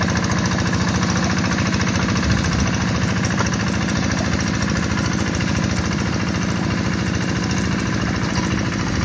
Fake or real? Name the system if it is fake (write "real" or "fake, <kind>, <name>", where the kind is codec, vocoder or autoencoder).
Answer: real